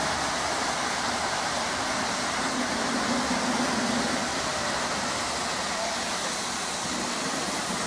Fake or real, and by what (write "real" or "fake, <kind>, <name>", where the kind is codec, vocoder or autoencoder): real